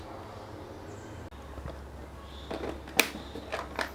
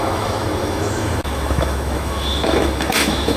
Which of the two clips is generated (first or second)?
second